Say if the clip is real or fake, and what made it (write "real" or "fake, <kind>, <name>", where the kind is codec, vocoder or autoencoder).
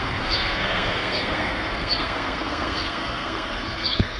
fake, codec, SNAC